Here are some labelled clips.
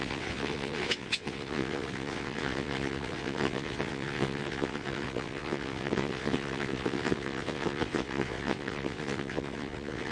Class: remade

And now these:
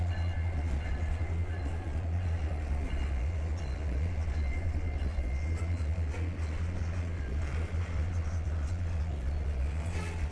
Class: remade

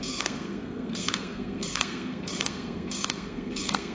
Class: remade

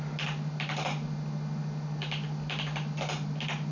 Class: recorded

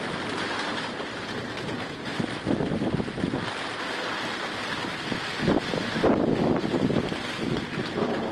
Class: recorded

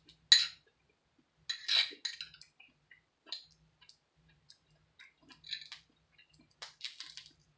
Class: recorded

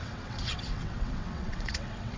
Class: remade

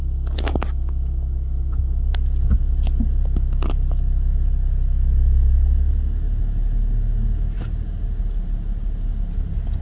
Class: recorded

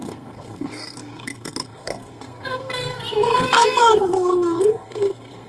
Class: remade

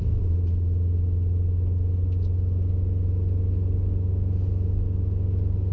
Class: recorded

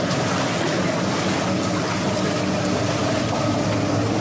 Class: recorded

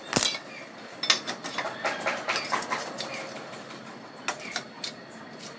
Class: recorded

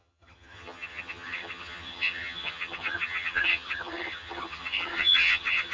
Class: remade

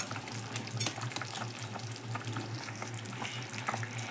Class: recorded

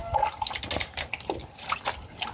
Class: recorded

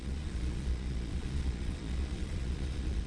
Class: remade